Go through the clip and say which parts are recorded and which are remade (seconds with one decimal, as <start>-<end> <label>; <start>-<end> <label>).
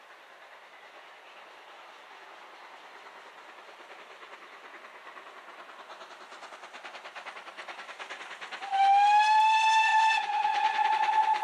0.0-11.4 recorded